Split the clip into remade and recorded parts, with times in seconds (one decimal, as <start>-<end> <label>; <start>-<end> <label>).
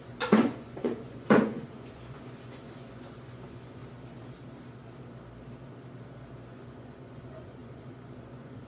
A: 0.0-3.8 remade; 3.8-6.5 recorded; 6.5-8.7 remade